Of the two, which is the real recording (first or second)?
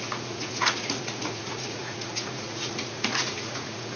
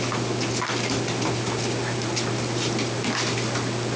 second